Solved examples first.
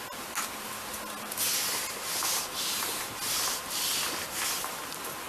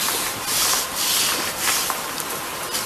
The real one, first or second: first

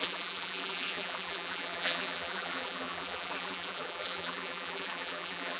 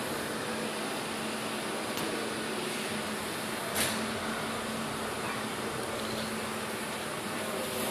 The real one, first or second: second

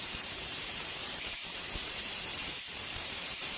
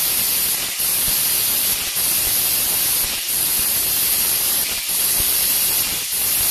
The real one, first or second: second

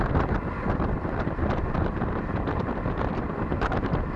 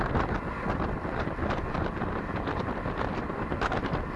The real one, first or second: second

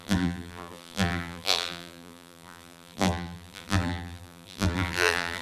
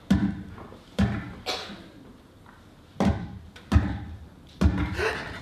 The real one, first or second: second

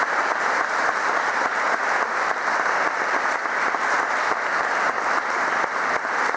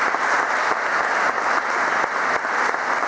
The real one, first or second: second